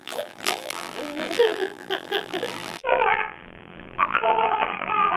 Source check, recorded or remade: remade